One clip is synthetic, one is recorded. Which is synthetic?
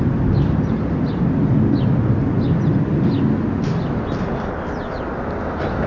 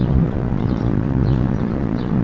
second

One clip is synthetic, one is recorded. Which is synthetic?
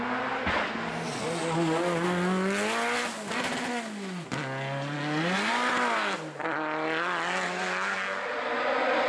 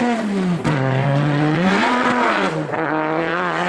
second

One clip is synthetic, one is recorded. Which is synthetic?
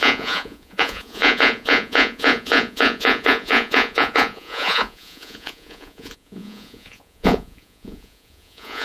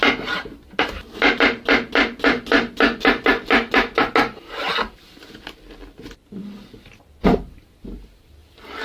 first